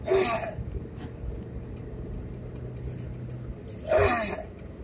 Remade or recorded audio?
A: recorded